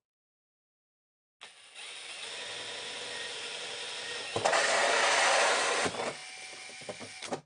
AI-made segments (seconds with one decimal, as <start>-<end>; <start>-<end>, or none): none